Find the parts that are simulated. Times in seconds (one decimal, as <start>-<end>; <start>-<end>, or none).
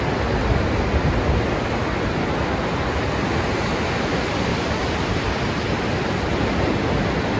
4.5-5.2